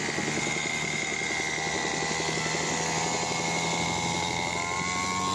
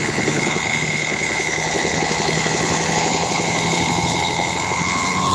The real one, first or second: first